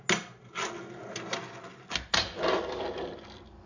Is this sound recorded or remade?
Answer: recorded